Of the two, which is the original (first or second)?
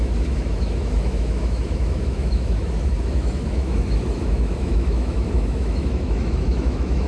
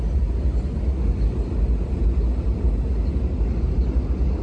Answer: second